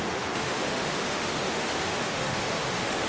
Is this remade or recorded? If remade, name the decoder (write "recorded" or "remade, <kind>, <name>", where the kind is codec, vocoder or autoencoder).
remade, autoencoder, DAC-VAE